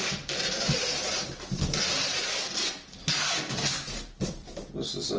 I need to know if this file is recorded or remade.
recorded